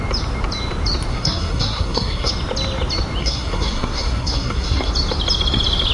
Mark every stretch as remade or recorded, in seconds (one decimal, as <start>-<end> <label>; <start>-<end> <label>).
0.0-1.1 recorded; 1.1-2.3 remade; 2.3-3.2 recorded; 3.2-4.9 remade; 4.9-5.9 recorded